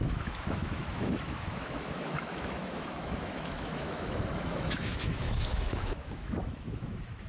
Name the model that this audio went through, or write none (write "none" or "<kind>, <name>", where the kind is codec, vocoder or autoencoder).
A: autoencoder, DAC-VAE